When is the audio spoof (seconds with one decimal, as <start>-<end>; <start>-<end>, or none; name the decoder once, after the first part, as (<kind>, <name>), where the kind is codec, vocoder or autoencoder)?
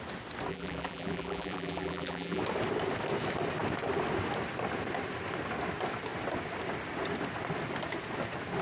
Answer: 0.5-2.4 (vocoder, BigVGAN v2)